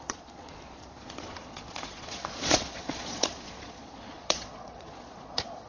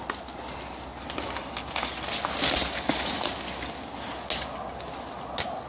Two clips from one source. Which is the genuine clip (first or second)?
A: second